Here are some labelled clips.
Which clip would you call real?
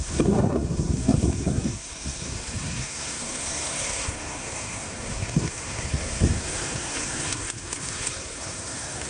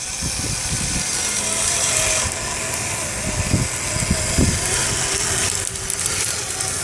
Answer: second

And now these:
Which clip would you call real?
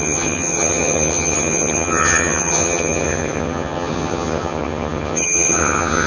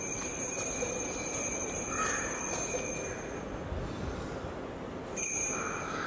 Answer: second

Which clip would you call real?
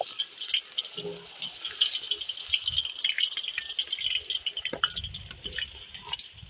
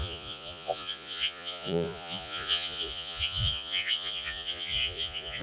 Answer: first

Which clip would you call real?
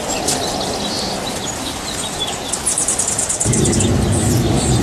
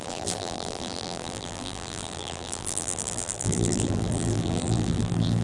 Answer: first